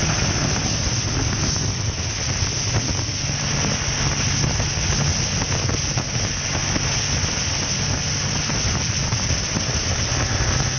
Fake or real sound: real